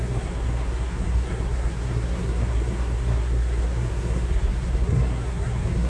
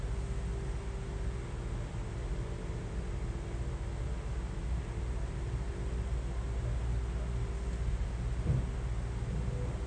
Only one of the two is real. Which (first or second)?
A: second